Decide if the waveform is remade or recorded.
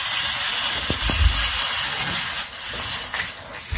recorded